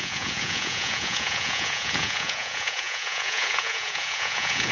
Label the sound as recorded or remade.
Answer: remade